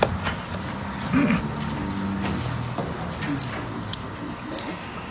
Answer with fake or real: real